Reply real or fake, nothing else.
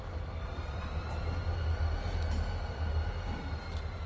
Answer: real